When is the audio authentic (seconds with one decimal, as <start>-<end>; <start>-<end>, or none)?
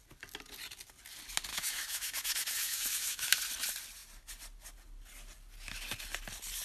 0.0-1.5; 3.4-6.6